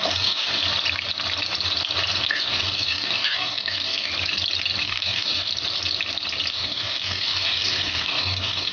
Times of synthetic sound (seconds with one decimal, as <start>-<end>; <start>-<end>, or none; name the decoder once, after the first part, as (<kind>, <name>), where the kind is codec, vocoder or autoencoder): 0.0-0.6 (codec, DAC); 2.3-4.1; 4.8-5.5; 6.5-8.7